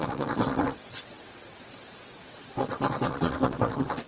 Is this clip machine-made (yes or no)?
yes